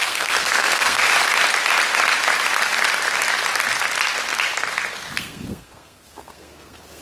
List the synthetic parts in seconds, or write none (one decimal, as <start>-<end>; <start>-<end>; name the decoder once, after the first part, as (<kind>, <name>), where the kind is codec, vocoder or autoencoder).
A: 0.0-1.0 (codec, SNAC); 5.2-7.0